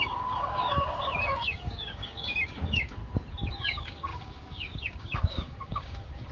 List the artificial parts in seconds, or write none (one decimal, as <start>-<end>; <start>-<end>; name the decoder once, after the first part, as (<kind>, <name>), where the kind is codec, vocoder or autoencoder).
0.0-3.0 (codec, DAC); 3.5-6.3